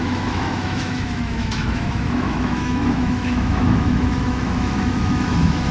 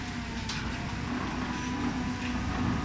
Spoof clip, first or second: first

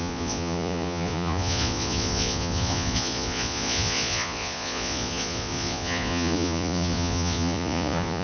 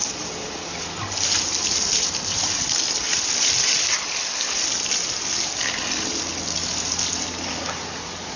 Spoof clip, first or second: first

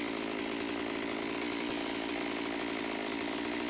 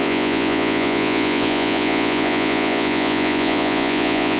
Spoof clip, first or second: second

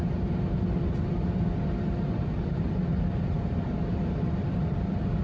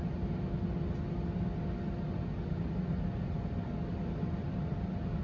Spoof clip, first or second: first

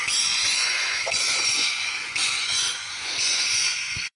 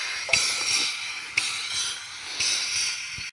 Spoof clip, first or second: first